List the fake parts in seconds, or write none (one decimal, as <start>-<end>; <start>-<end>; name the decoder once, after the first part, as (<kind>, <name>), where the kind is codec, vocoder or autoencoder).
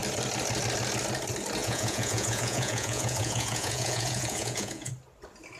1.6-4.9 (vocoder, Vocos)